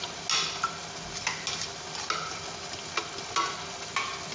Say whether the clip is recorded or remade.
recorded